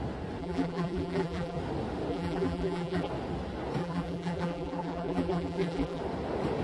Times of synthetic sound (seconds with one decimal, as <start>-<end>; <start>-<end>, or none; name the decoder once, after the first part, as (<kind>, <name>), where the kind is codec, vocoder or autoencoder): 0.4-1.6 (vocoder, BigVGAN v2); 2.1-3.1; 3.8-6.0